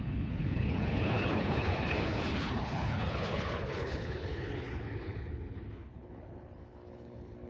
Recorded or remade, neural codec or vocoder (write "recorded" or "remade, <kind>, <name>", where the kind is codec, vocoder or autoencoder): remade, codec, HILCodec